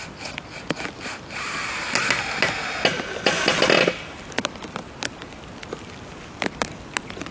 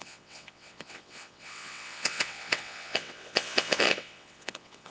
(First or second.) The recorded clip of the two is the first